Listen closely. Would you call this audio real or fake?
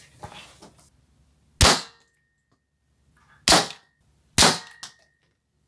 real